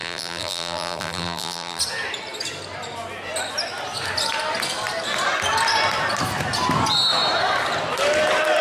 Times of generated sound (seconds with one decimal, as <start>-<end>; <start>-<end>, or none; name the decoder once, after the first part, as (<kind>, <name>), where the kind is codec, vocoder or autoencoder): 0.0-1.8 (vocoder, BigVGAN v2)